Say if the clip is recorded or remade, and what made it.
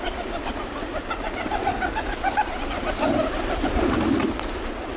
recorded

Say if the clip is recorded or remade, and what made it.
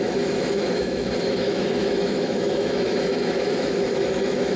remade, autoencoder, DAC-VAE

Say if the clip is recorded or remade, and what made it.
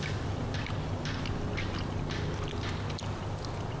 recorded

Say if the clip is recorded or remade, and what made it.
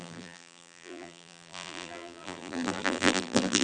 remade, vocoder, BigVGAN v2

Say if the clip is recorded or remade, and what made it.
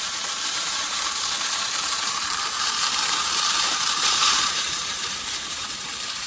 remade, vocoder, BigVGAN v2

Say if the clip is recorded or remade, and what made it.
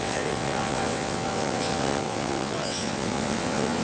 remade, vocoder, WaveNeXt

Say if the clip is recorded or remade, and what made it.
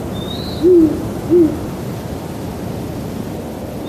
recorded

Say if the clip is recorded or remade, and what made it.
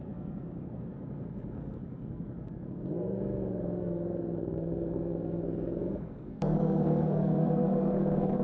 remade, codec, SNAC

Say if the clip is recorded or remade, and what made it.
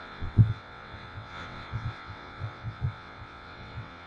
remade, vocoder, WaveNeXt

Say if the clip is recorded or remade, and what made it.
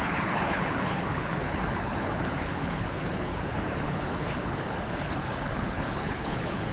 remade, codec, HILCodec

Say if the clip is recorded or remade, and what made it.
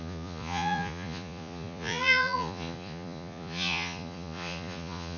remade, vocoder, Vocos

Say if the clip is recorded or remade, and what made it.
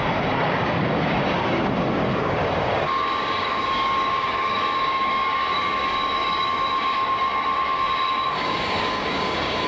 remade, codec, DAC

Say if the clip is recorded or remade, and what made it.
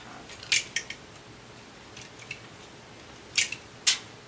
recorded